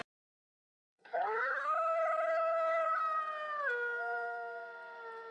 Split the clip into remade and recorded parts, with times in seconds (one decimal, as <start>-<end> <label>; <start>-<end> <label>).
0.0-0.6 recorded; 0.6-3.0 remade; 3.0-5.3 recorded